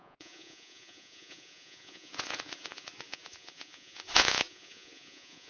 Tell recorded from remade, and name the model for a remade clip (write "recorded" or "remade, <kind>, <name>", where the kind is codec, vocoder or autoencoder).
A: remade, vocoder, Vocos